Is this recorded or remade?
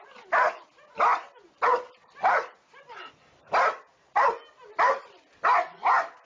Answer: recorded